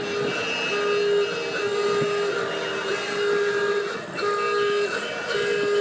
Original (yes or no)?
yes